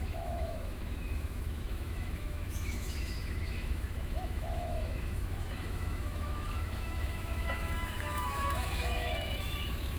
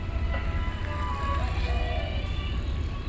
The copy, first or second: first